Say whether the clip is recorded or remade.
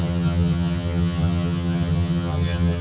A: remade